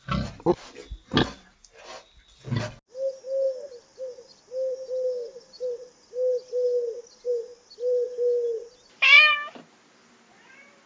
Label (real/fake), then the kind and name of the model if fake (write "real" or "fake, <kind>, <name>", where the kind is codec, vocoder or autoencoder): real